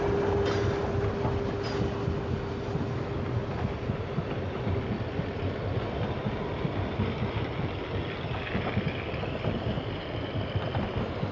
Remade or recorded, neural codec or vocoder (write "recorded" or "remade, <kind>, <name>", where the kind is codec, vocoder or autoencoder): recorded